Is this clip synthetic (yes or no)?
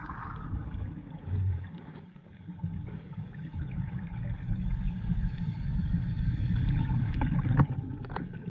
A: yes